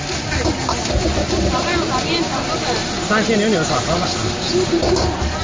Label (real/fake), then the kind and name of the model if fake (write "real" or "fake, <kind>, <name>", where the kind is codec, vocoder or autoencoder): real